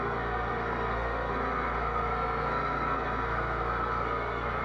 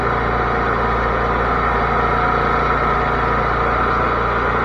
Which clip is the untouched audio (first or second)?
second